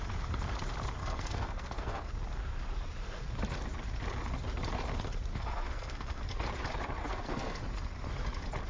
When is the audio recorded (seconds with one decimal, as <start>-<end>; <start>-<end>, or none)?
0.0-1.0; 2.1-5.3; 6.2-7.0; 7.6-8.7